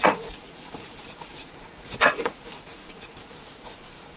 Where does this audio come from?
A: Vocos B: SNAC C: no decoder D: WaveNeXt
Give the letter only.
A